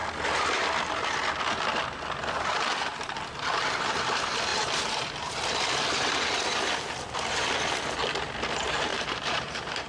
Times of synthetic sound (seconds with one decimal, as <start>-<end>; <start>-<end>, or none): 4.5-5.3; 8.9-9.9